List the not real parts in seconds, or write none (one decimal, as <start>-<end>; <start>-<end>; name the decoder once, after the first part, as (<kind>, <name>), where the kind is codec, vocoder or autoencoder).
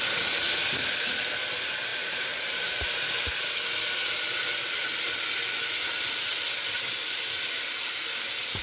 1.9-3.0 (vocoder, BigVGAN v2)